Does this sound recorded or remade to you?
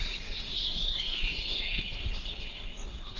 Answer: remade